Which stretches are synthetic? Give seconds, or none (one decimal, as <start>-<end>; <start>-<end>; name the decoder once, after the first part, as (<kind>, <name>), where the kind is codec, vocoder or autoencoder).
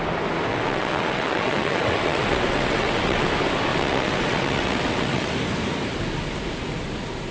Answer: 0.5-3.3 (vocoder, WaveNeXt); 3.7-5.3